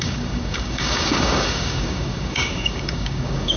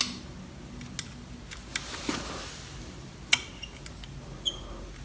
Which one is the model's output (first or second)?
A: first